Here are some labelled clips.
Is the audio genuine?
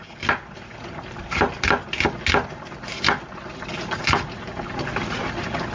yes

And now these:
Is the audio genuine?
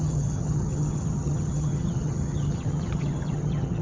no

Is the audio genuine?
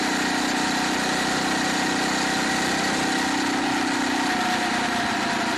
yes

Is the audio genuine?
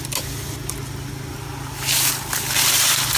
yes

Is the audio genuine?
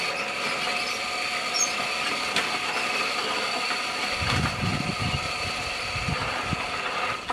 yes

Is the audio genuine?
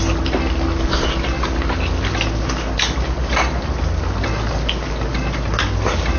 yes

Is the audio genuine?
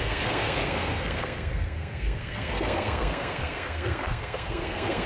no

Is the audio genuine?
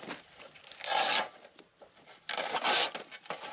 yes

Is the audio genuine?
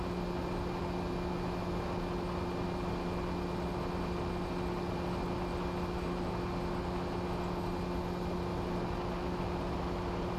yes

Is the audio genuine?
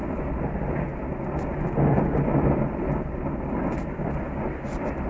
yes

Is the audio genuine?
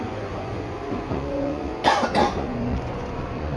no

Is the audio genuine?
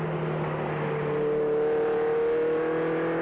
yes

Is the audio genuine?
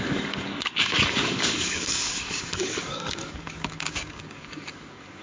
no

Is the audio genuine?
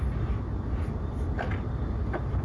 yes